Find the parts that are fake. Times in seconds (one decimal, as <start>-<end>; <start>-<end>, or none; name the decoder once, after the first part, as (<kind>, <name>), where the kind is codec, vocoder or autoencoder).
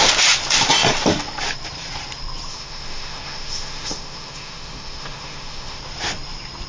2.5-5.8 (autoencoder, DAC-VAE)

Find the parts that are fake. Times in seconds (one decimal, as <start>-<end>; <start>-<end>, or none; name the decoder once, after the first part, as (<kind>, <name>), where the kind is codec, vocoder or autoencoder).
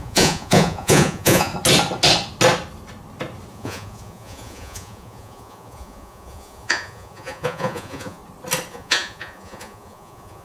0.0-1.5 (vocoder, Vocos); 3.5-8.2; 8.7-10.4